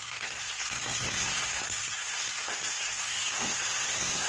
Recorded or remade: remade